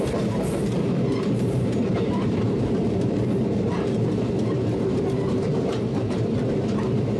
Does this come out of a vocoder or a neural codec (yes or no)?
yes